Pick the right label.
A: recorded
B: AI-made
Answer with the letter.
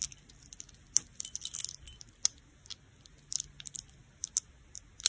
A